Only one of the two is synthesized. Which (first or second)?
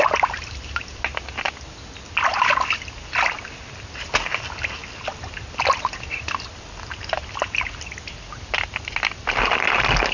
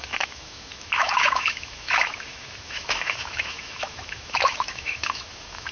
second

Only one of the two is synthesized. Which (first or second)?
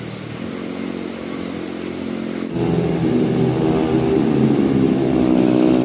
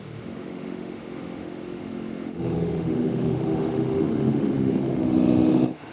second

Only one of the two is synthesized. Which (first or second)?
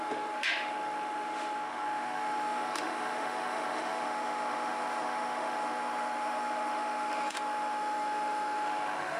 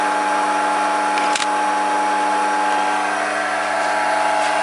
first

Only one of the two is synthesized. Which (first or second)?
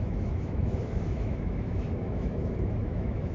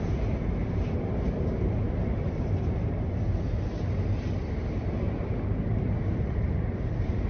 first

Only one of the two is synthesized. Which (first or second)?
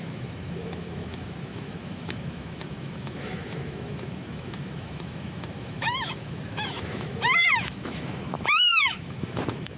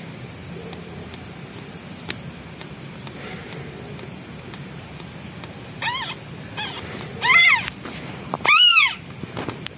first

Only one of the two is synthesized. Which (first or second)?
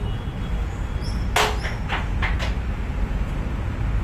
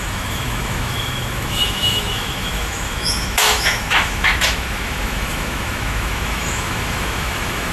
second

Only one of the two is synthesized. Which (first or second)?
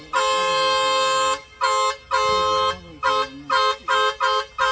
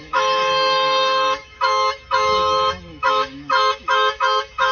second